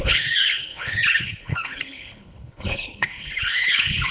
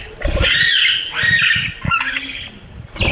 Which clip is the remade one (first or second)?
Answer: first